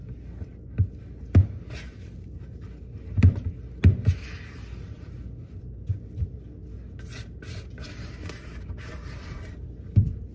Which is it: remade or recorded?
recorded